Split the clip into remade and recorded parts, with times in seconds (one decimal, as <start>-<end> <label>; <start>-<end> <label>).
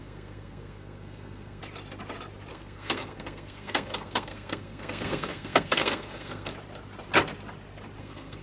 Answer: 0.0-1.6 remade; 1.6-2.5 recorded; 2.5-6.5 remade; 6.5-8.0 recorded; 8.0-8.4 remade